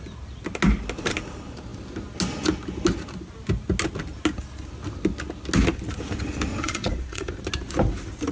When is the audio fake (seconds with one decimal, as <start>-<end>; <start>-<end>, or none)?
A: 6.5-7.4